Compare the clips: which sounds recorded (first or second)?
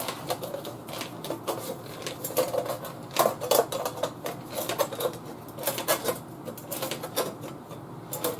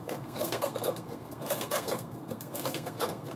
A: first